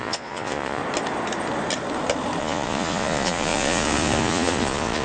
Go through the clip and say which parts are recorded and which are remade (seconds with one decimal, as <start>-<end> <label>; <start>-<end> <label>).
0.0-0.8 remade; 0.8-2.4 recorded; 2.4-5.0 remade